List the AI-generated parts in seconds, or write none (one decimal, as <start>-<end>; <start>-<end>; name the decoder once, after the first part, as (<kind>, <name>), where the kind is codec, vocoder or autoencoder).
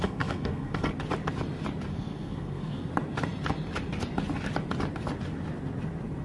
0.0-0.9 (codec, SNAC); 1.9-2.9